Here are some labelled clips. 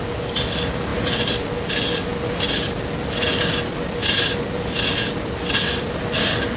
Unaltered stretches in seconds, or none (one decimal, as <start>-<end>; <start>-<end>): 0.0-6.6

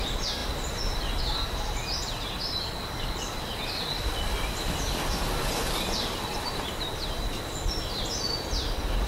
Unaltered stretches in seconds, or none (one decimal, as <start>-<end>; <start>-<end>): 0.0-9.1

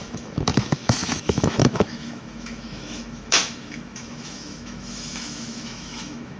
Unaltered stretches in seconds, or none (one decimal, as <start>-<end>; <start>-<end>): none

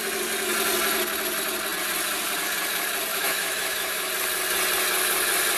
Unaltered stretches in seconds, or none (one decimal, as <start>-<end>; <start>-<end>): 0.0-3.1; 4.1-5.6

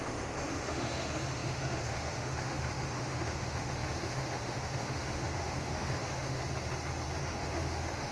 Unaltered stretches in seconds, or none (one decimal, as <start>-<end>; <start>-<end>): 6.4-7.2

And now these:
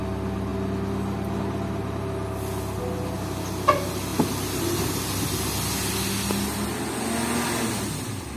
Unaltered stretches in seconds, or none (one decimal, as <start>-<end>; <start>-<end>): 0.0-8.4

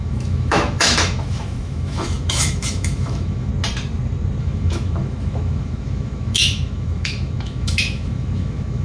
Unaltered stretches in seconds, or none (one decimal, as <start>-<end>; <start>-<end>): 3.5-4.4